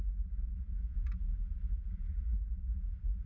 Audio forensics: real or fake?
real